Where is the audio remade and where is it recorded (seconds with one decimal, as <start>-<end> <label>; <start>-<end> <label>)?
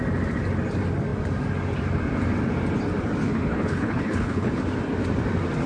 0.0-3.2 recorded; 3.2-4.6 remade; 4.6-5.7 recorded